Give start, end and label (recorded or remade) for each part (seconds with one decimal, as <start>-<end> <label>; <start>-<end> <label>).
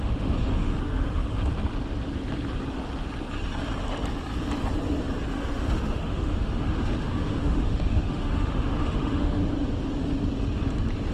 0.0-1.4 remade; 1.4-5.3 recorded; 5.3-9.4 remade; 9.4-11.1 recorded